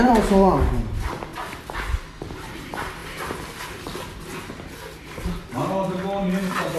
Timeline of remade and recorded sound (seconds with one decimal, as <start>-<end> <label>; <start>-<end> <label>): 0.0-1.3 remade; 1.3-2.2 recorded; 2.2-3.0 remade; 3.0-6.8 recorded